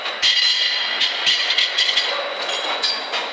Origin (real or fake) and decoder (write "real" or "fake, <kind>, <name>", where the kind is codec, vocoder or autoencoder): fake, vocoder, Vocos